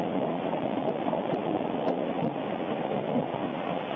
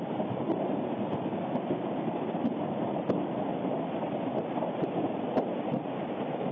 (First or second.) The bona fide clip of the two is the second